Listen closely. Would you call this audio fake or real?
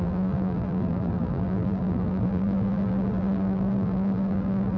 fake